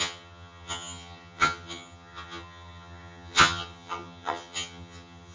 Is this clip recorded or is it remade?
remade